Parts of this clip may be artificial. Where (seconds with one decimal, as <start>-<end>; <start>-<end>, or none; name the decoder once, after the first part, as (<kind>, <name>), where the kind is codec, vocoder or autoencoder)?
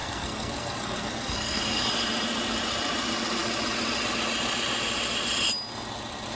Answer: 0.0-1.9 (codec, SNAC)